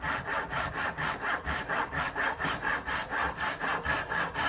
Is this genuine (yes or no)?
yes